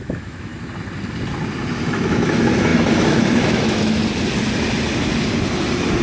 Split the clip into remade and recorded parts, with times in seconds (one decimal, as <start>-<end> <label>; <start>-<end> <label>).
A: 0.0-0.5 remade; 0.5-1.7 recorded; 1.7-4.0 remade; 4.0-6.0 recorded